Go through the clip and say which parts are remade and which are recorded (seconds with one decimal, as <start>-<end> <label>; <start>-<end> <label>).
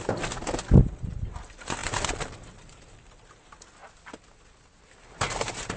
0.0-1.8 recorded; 1.8-3.1 remade; 3.1-5.8 recorded